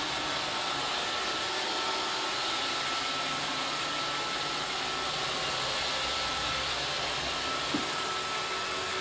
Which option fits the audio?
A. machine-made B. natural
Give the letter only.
B